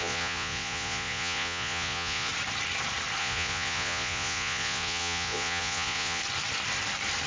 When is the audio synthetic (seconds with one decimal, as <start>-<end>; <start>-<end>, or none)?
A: 0.0-2.3; 3.2-6.2